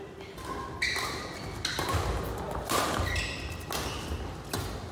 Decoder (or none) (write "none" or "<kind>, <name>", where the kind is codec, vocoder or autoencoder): none